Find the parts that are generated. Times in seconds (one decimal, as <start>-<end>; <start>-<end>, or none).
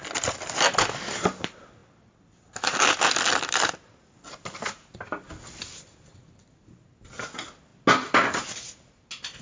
none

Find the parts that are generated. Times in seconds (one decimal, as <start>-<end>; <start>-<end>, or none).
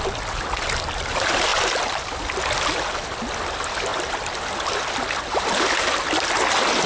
none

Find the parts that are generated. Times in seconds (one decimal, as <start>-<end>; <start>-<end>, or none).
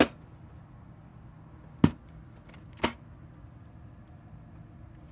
none